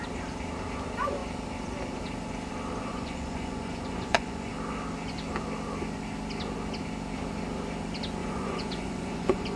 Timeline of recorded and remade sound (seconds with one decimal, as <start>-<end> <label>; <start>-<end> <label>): 0.0-2.9 recorded; 2.9-4.5 remade; 4.5-8.2 recorded; 8.2-9.6 remade